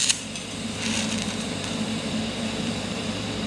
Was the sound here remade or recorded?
remade